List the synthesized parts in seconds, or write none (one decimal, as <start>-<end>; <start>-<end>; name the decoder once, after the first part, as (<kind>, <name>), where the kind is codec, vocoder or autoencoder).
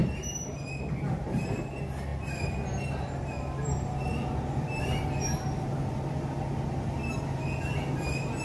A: none